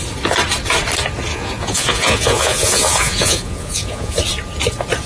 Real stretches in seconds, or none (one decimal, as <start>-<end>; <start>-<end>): 0.0-1.3; 4.2-5.1